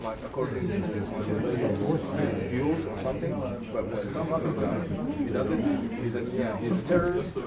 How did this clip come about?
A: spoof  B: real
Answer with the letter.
A